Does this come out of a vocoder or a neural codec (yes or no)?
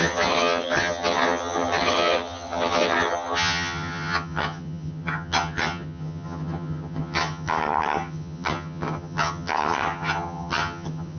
yes